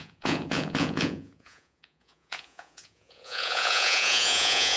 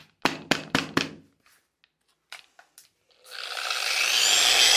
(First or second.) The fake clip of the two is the first